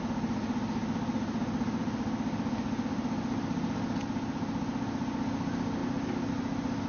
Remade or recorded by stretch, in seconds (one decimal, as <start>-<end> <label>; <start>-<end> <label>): 0.0-6.9 recorded